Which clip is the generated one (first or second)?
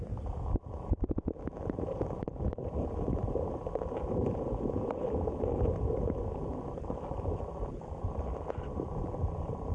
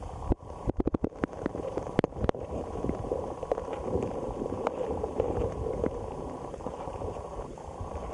second